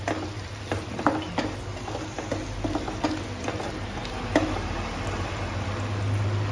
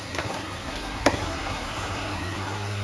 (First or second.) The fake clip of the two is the second